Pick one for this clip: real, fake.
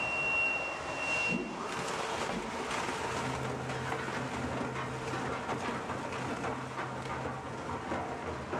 real